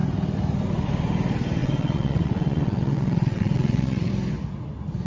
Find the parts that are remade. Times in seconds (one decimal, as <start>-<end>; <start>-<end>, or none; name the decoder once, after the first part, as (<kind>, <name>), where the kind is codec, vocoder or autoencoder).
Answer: 1.6-4.1 (vocoder, WaveNeXt)